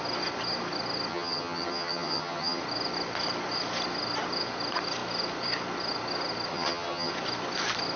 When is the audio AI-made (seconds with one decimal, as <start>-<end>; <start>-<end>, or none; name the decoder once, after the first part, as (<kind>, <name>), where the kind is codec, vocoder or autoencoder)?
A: 1.1-2.6 (vocoder, HiFi-GAN); 6.5-7.1

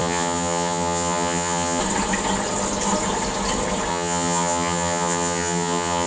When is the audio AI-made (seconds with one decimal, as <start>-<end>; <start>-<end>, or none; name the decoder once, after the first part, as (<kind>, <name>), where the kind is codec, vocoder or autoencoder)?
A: 0.0-1.8 (vocoder, HiFi-GAN); 3.9-6.1